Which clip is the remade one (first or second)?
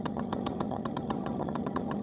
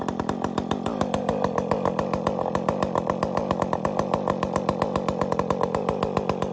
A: first